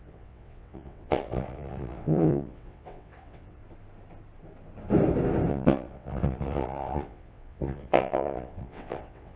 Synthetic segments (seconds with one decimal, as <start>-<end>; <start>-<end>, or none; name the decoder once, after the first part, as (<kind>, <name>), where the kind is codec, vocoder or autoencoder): 0.0-3.6 (vocoder, WaveNeXt); 5.5-9.4